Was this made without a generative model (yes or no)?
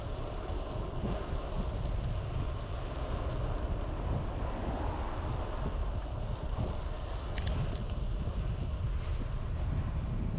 yes